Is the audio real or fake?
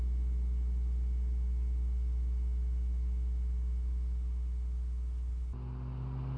real